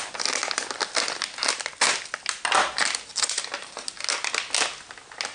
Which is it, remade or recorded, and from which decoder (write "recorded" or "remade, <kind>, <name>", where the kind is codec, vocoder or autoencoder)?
recorded